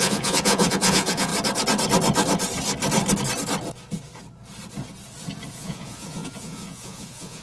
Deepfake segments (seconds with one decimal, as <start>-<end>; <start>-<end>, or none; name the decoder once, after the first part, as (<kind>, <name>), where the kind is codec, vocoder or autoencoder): 0.0-1.3 (vocoder, Vocos); 5.5-7.4